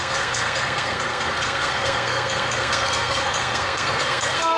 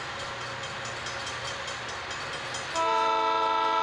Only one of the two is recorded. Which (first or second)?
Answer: second